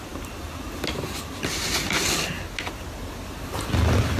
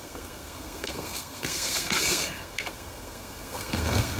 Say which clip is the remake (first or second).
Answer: second